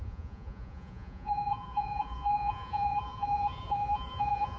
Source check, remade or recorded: remade